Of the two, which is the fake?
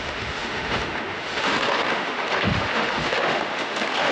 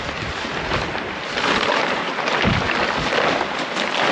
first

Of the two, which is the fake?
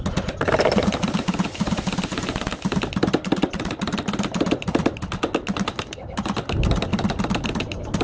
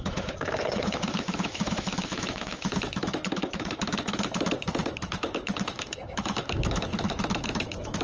second